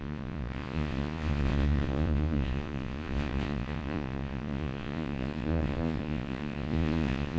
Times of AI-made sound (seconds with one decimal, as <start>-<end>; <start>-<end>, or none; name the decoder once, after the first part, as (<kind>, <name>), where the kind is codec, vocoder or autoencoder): 0.0-7.4 (vocoder, Vocos)